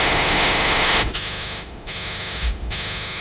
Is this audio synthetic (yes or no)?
yes